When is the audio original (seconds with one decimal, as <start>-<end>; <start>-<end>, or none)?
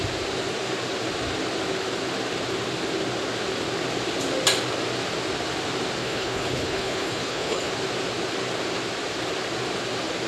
0.0-6.0; 7.7-10.3